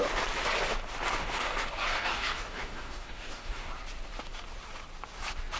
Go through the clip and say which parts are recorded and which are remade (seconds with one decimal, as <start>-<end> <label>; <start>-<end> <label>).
0.0-1.2 recorded; 1.2-3.7 remade; 3.7-5.6 recorded